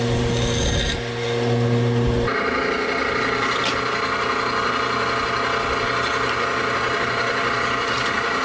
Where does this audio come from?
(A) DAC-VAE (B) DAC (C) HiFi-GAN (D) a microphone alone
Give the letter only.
D